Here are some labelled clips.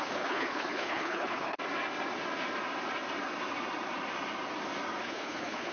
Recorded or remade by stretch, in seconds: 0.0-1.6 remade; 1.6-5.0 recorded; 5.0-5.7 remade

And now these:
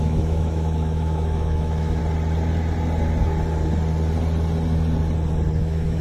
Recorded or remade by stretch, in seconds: 0.0-2.0 remade; 2.0-5.6 recorded; 5.6-6.0 remade